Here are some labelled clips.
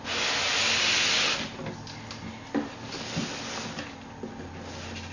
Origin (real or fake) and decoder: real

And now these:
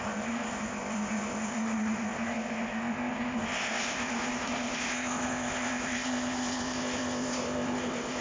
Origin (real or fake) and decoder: fake, codec, ZipCodec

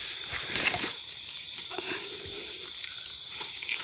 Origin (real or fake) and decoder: fake, vocoder, BigVGAN v2